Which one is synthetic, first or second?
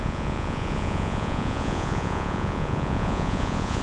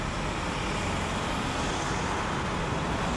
first